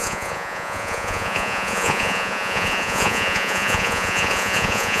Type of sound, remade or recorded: remade